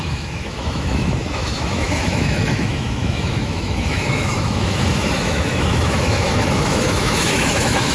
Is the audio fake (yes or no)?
yes